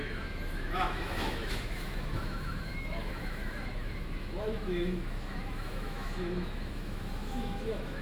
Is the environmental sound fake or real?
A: fake